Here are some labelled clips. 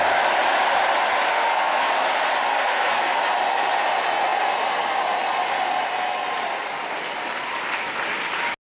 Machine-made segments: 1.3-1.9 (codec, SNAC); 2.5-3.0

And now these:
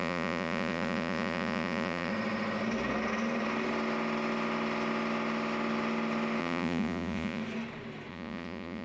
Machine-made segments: 0.0-2.1 (vocoder, Vocos); 6.4-7.4; 8.1-8.8

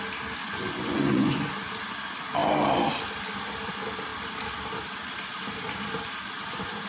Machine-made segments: 0.4-1.5 (vocoder, Vocos)

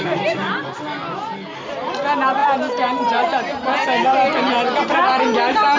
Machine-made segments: none

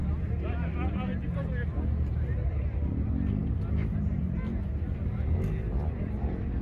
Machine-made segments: none

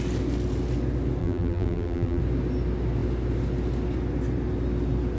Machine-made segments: 1.2-2.2 (vocoder, BigVGAN v2)

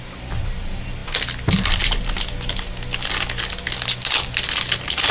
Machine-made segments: none

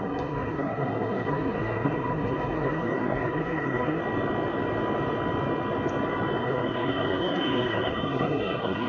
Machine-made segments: 0.0-4.0 (codec, SNAC); 6.4-8.9